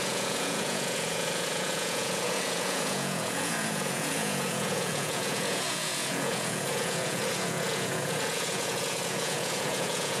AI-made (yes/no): yes